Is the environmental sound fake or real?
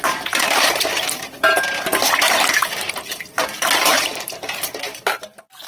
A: fake